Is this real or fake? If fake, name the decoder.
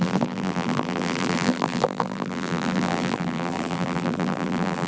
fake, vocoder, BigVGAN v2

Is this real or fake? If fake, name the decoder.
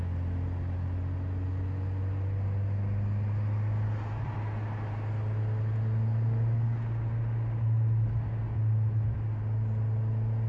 real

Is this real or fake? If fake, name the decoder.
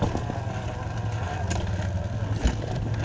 real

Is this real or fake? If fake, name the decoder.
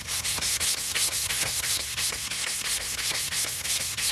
fake, codec, SNAC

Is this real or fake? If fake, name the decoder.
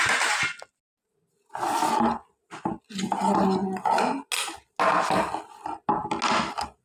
real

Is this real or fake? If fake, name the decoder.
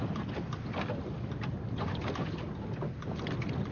real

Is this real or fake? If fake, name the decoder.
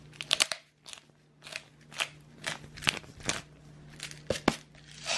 real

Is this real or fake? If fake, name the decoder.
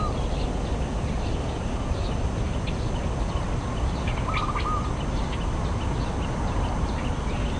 real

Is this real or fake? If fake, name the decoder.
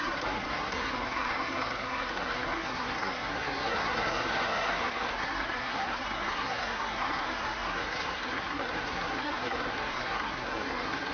fake, codec, SNAC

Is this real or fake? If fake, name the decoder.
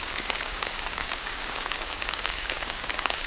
fake, codec, DAC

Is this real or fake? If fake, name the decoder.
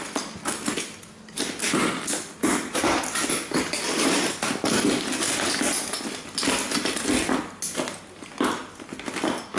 real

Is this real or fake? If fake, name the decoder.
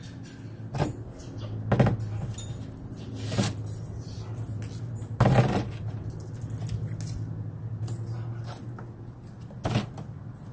real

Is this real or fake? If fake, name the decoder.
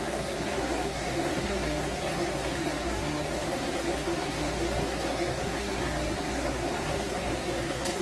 fake, codec, SNAC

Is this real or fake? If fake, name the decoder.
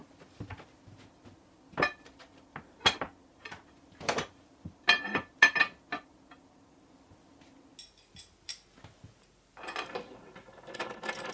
real